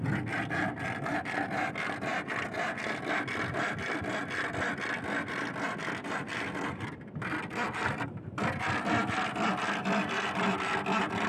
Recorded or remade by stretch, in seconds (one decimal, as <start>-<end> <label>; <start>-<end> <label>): 0.0-11.3 recorded

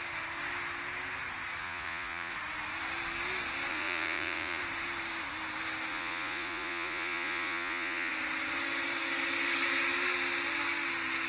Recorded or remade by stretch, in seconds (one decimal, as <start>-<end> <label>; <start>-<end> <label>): 0.0-1.6 recorded; 1.6-2.3 remade; 2.3-3.7 recorded; 3.7-4.6 remade; 4.6-5.9 recorded; 5.9-8.1 remade; 8.1-11.3 recorded

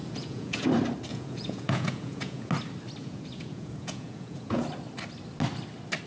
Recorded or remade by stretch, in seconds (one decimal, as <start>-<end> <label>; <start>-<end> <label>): 0.0-0.7 remade; 0.7-1.1 recorded; 1.1-2.5 remade; 2.5-3.0 recorded; 3.0-4.6 remade; 4.6-6.1 recorded

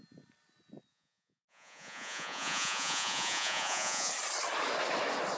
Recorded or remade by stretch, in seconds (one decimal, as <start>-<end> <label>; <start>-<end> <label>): 0.0-0.9 recorded; 0.9-4.1 remade; 4.1-5.4 recorded

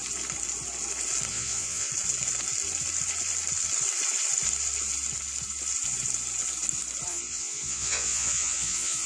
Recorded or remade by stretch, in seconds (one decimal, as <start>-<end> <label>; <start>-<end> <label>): 0.0-1.3 recorded; 1.3-1.9 remade; 1.9-7.1 recorded; 7.1-9.1 remade

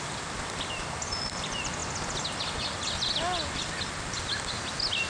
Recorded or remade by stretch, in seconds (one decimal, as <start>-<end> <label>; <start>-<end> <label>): 0.0-5.1 recorded

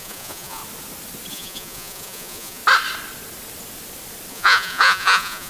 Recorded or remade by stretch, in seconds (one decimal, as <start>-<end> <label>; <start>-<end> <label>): 0.0-0.6 remade; 0.6-1.3 recorded; 1.3-2.6 remade; 2.6-4.3 recorded; 4.3-5.5 remade

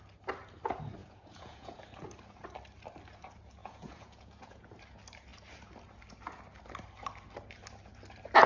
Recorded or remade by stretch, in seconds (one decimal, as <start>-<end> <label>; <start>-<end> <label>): 0.0-1.0 recorded; 1.0-1.8 remade; 1.8-3.6 recorded; 3.6-4.7 remade; 4.7-8.5 recorded